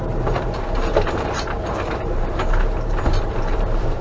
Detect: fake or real fake